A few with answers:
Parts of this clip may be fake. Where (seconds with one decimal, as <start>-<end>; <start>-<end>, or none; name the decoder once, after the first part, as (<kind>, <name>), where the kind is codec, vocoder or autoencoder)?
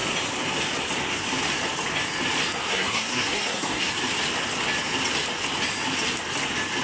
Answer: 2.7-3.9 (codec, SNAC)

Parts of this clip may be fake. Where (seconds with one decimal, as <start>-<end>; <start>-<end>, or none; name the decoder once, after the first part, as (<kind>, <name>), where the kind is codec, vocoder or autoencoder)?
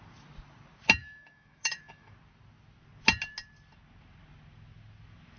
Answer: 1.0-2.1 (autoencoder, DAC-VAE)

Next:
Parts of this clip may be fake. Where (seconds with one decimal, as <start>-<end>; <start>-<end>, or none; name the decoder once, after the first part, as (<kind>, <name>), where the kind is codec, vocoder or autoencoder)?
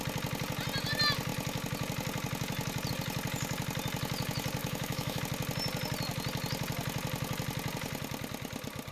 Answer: 4.6-5.2 (autoencoder, DAC-VAE)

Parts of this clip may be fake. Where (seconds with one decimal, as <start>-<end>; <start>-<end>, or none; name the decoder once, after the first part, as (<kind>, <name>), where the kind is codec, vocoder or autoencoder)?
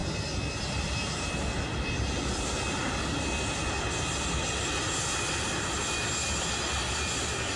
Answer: none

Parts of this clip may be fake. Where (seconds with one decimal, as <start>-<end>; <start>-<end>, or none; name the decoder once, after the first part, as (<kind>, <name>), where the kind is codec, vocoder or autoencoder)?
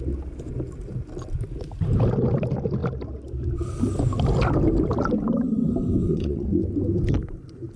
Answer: 6.1-6.6 (vocoder, WaveNeXt)